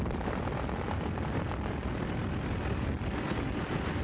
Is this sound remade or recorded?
recorded